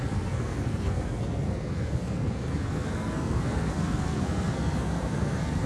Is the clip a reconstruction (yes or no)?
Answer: yes